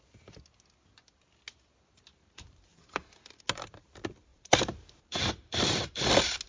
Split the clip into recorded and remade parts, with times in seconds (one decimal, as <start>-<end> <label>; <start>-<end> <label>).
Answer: 0.0-2.1 recorded; 2.1-3.4 remade; 3.4-4.3 recorded; 4.3-5.9 remade; 5.9-6.5 recorded